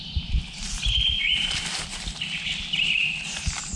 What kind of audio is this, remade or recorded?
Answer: remade